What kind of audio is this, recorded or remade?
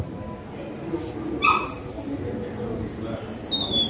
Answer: recorded